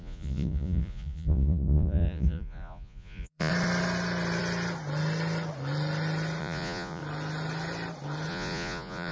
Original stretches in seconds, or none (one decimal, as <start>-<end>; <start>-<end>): 3.5-6.4; 7.0-8.3

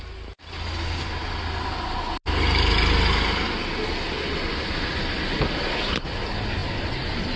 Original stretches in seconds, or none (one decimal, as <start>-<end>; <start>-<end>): 0.0-7.4

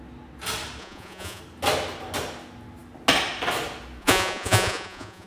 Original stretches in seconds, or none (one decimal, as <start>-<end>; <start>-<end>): 0.0-0.8; 1.4-4.0

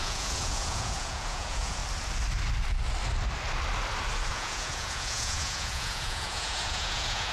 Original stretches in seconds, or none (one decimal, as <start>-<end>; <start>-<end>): 1.8-4.3

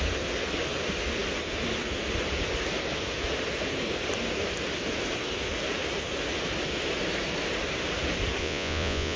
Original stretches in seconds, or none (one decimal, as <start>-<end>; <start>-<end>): 0.0-8.4

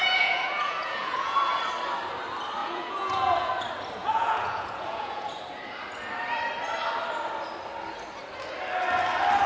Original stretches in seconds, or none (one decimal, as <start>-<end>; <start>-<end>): 1.6-2.6; 3.5-4.0; 5.3-9.5